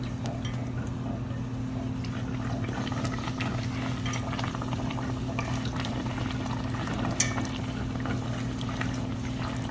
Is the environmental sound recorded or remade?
recorded